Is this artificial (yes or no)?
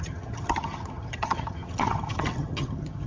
yes